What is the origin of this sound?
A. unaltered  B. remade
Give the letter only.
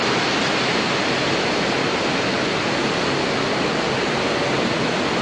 A